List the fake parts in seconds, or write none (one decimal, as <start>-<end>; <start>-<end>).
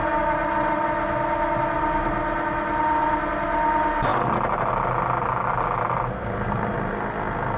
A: none